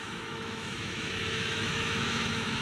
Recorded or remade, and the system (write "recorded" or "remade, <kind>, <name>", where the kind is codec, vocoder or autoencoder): remade, autoencoder, DAC-VAE